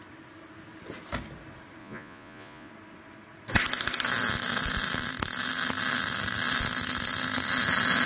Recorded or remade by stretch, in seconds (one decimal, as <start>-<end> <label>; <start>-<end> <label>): 0.0-1.8 recorded; 1.8-2.7 remade; 2.7-8.1 recorded